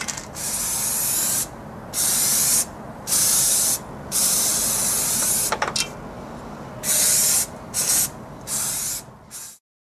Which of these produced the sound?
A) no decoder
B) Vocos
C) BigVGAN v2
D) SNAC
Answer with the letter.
A